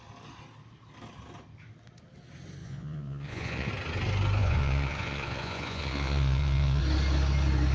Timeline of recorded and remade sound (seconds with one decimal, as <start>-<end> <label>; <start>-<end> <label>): 0.0-2.6 recorded; 2.6-3.7 remade; 3.7-4.4 recorded; 4.4-6.8 remade; 6.8-7.7 recorded